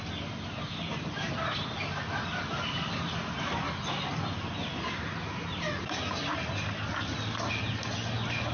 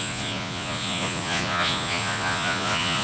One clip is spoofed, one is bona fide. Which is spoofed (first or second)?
second